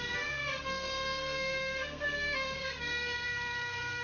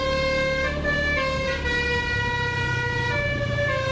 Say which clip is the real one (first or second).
second